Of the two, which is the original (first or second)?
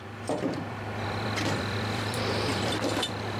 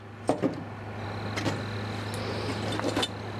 second